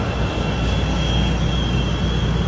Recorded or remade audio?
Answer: recorded